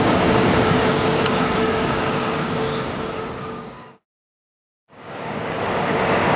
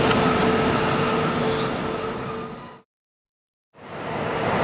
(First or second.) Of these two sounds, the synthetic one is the first